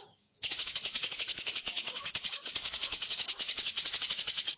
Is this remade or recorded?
remade